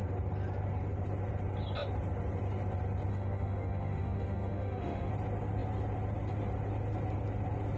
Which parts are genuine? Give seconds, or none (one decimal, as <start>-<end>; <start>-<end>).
0.0-3.1; 5.1-7.8